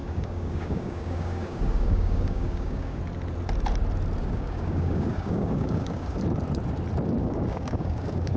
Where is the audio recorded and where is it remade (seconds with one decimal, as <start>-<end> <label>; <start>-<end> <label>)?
0.0-3.0 remade; 3.0-4.2 recorded; 4.2-6.2 remade; 6.2-7.2 recorded; 7.2-8.4 remade

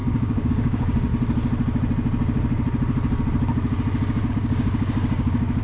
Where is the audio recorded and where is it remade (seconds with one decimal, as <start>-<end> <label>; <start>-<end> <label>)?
0.0-1.1 remade; 1.1-4.3 recorded; 4.3-5.6 remade